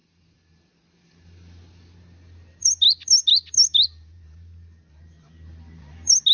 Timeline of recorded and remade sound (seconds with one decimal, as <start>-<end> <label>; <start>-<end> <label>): 0.0-6.3 recorded